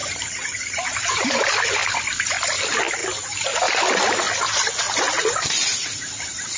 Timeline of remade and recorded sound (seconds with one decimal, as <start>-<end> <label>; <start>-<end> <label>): 0.0-1.6 remade; 1.6-6.6 recorded